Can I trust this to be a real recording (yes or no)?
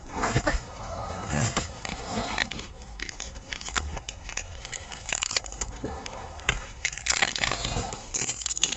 no